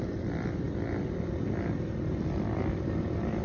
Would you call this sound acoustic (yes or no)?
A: yes